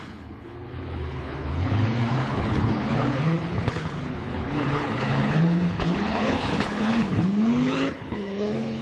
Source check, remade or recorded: remade